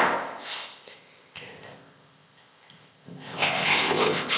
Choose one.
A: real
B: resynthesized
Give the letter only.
B